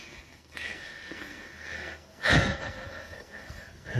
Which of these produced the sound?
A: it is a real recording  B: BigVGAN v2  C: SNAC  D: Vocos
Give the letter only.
C